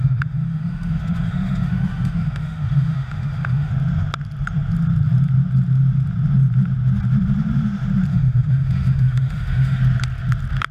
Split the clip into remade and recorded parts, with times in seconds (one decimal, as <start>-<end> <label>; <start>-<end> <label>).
0.0-3.7 remade; 3.7-8.1 recorded; 8.1-9.8 remade; 9.8-10.7 recorded